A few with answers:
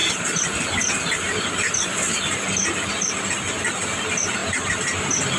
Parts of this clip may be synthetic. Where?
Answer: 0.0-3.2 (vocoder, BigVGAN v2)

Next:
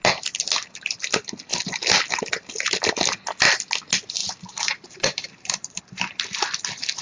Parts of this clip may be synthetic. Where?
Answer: 4.2-5.8 (vocoder, BigVGAN v2)

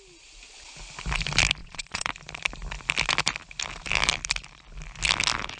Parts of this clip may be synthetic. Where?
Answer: 1.6-2.1 (vocoder, Vocos)

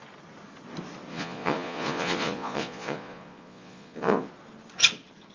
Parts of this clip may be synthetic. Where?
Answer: 1.1-4.3 (vocoder, Vocos)

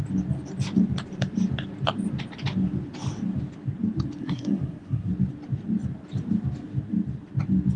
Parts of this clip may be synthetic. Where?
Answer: 4.2-5.1 (codec, SNAC)

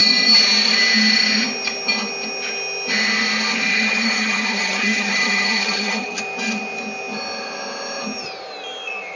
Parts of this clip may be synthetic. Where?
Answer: 3.7-6.2 (vocoder, HiFi-GAN)

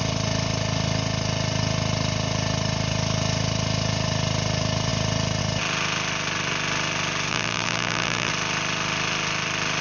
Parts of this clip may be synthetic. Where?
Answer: 7.3-8.3 (vocoder, BigVGAN v2)

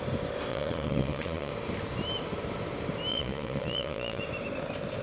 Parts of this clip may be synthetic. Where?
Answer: 0.5-1.5 (vocoder, Vocos); 3.1-4.2